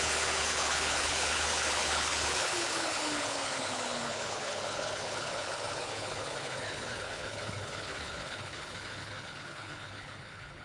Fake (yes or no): yes